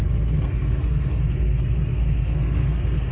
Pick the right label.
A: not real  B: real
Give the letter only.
A